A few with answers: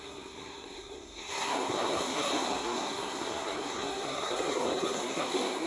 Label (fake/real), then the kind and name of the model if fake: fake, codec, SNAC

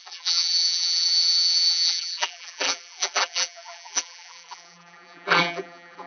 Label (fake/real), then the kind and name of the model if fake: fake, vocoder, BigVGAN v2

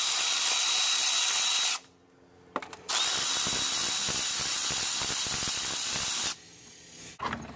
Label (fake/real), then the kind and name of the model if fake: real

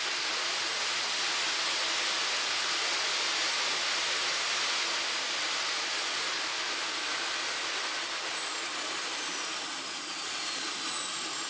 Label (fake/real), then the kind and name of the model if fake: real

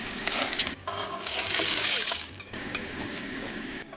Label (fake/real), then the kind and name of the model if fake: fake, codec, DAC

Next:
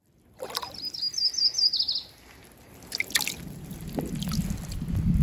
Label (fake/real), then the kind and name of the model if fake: real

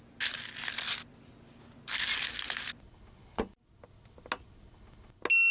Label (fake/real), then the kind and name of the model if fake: real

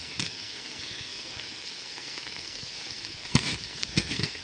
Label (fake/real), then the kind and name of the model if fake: fake, codec, SNAC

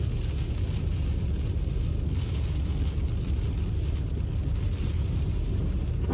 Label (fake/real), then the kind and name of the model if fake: real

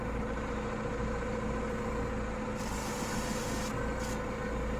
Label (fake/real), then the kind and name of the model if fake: real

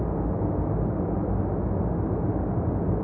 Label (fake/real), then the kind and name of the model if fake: real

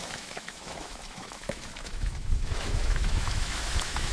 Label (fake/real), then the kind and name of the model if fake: fake, autoencoder, DAC-VAE